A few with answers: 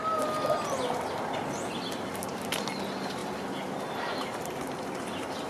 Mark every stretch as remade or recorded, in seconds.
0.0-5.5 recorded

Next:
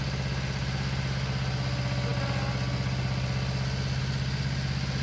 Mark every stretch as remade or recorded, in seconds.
0.0-5.0 recorded

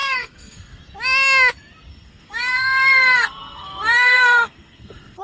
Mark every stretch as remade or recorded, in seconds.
0.0-0.8 remade; 0.8-1.9 recorded; 1.9-5.2 remade

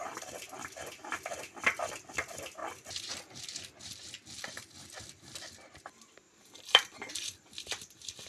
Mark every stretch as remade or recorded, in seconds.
0.0-2.6 remade; 2.6-3.4 recorded; 3.4-8.3 remade

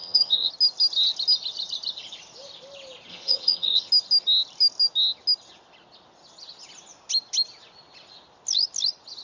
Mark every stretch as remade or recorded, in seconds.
0.0-0.5 remade; 0.5-3.1 recorded; 3.1-3.9 remade; 3.9-9.2 recorded

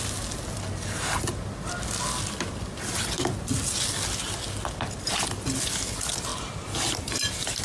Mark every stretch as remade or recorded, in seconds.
0.0-6.3 recorded; 6.3-7.6 remade

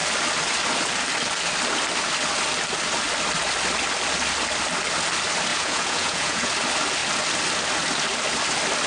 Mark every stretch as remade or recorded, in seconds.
0.0-5.5 recorded; 5.5-6.5 remade; 6.5-8.9 recorded

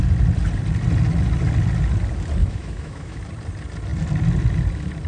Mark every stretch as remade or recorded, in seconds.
0.0-2.4 recorded; 2.4-3.2 remade; 3.2-5.1 recorded